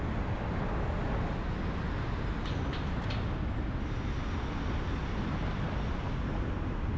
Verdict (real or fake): real